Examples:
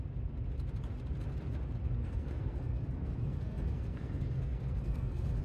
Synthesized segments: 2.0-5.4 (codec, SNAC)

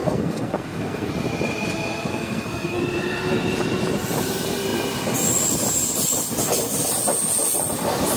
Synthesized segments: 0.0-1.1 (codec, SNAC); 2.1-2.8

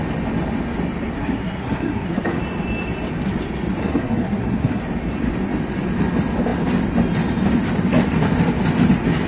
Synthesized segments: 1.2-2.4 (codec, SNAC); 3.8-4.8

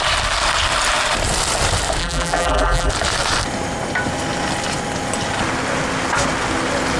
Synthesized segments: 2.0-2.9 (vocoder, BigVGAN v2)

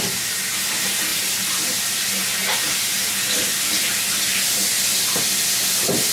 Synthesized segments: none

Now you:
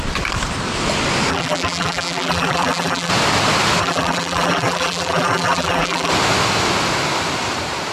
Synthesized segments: 1.3-3.1 (vocoder, BigVGAN v2); 3.8-6.1

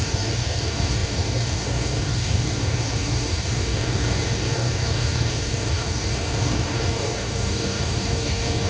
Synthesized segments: 0.0-8.7 (codec, DAC)